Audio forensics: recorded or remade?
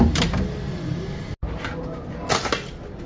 recorded